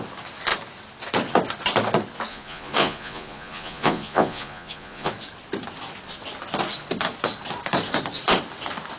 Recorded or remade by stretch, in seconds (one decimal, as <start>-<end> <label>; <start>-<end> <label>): 0.0-2.3 recorded; 2.3-5.1 remade; 5.1-9.0 recorded